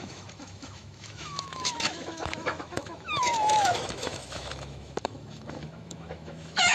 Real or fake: fake